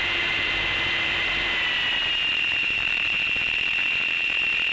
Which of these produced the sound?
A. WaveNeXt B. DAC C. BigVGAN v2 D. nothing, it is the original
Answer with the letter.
C